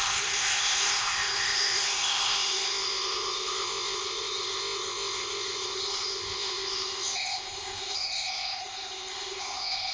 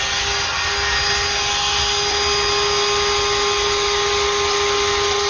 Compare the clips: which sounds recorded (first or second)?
second